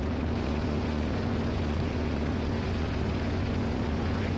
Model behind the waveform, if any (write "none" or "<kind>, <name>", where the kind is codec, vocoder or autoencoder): vocoder, Vocos